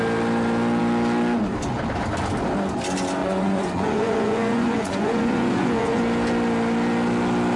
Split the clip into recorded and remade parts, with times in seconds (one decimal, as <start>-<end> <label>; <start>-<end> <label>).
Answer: 0.0-3.2 recorded; 3.2-6.0 remade; 6.0-7.6 recorded